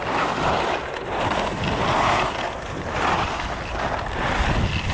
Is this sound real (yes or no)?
yes